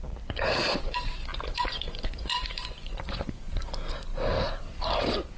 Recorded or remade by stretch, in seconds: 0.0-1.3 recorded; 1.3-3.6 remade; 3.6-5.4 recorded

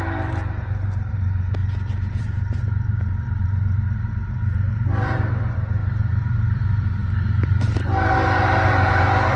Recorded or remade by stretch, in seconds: 0.0-1.6 remade; 1.6-2.2 recorded; 2.2-9.4 remade

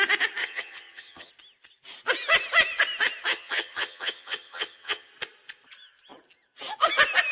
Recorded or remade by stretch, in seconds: 0.0-0.4 recorded; 0.4-1.3 remade; 1.3-3.3 recorded; 3.3-5.1 remade; 5.1-7.3 recorded

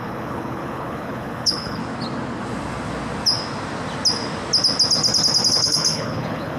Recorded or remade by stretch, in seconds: 0.0-1.8 remade; 1.8-5.5 recorded; 5.5-6.6 remade

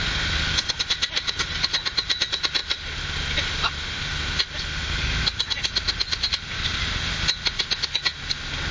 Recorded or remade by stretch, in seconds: 0.0-8.7 recorded